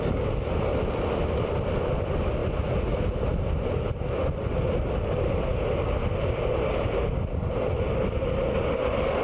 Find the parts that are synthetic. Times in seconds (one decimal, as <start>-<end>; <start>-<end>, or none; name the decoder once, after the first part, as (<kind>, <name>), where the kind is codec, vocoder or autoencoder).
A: none

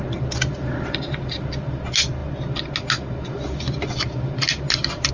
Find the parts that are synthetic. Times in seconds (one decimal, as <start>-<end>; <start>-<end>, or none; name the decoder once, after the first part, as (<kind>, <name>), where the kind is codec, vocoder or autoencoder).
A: none